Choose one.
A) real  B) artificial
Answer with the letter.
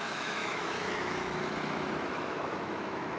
B